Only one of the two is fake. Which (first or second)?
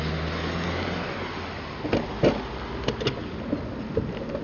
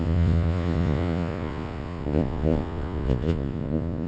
second